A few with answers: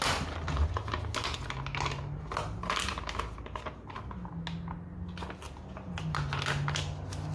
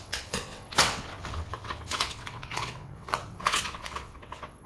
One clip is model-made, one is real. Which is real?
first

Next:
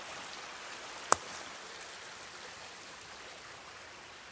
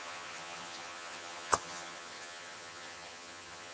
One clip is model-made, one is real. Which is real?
first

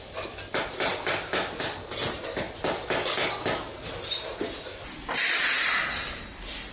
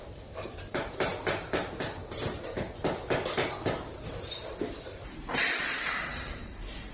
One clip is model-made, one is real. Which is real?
first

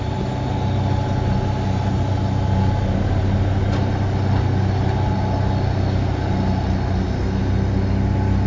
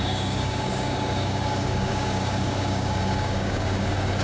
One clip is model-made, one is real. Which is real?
first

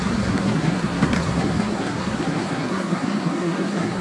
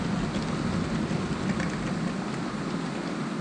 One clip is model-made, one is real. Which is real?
second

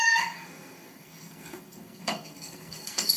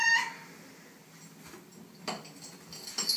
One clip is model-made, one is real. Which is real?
second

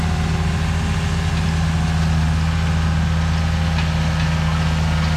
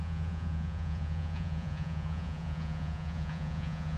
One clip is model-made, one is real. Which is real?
first